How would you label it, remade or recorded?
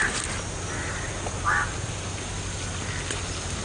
recorded